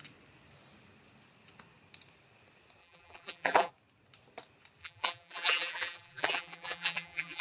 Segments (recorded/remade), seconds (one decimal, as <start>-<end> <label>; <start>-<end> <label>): 0.0-2.8 recorded; 2.8-3.7 remade; 3.7-4.8 recorded; 4.8-7.4 remade